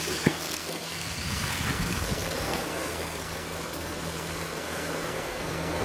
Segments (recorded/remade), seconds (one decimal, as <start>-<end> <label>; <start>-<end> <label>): 0.0-5.8 remade